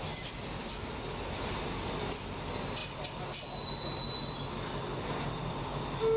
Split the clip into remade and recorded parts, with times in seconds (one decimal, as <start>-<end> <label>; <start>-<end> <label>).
0.0-6.2 recorded